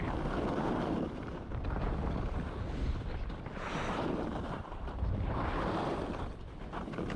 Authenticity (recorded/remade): remade